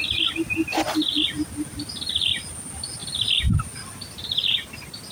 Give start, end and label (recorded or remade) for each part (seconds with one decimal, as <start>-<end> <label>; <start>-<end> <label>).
0.0-5.1 recorded